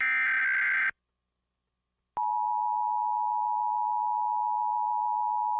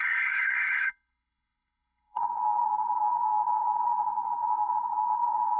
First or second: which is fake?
second